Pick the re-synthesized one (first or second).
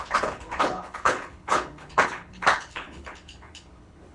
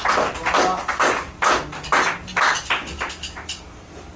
first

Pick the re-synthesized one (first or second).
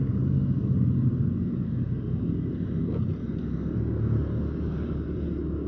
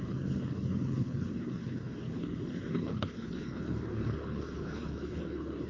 second